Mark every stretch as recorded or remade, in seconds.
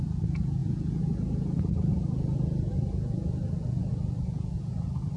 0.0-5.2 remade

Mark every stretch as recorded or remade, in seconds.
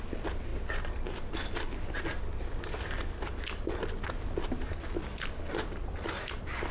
0.0-6.7 recorded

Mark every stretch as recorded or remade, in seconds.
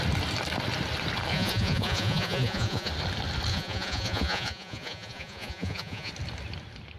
0.0-1.3 recorded; 1.3-2.9 remade; 2.9-3.5 recorded; 3.5-6.1 remade; 6.1-7.0 recorded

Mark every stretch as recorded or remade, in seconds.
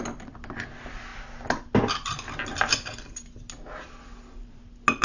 0.0-5.0 recorded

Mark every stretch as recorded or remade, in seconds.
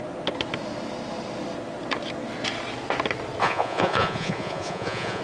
0.0-3.4 recorded; 3.4-5.2 remade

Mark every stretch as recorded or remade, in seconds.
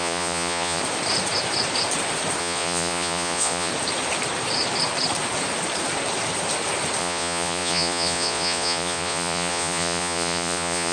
0.0-0.8 remade; 0.8-2.4 recorded; 2.4-3.7 remade; 3.7-7.0 recorded; 7.0-10.9 remade